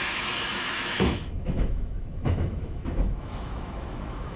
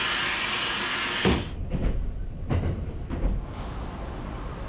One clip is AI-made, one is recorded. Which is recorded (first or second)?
second